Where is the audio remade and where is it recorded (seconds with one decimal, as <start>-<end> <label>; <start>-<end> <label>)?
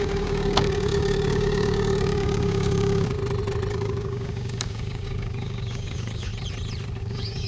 0.0-3.2 remade; 3.2-3.7 recorded; 3.7-6.3 remade; 6.3-7.0 recorded; 7.0-7.5 remade